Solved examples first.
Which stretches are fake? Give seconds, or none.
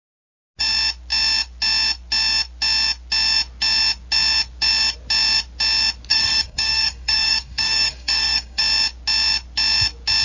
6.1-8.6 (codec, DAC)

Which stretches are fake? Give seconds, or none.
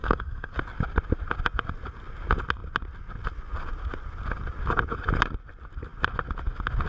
0.0-0.5 (codec, SNAC)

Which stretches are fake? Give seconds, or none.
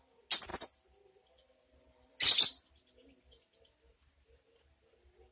none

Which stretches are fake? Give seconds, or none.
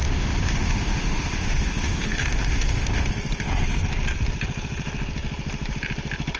0.0-3.1 (autoencoder, DAC-VAE)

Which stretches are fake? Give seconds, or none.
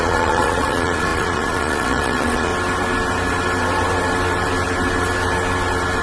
0.0-2.5 (vocoder, Vocos)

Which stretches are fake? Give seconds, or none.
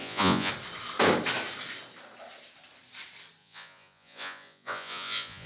0.0-0.5 (vocoder, Vocos); 3.4-5.5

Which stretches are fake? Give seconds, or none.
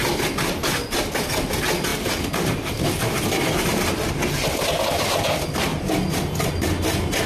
none